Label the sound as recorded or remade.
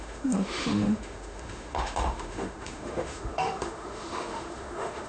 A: remade